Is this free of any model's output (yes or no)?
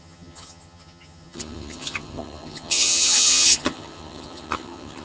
no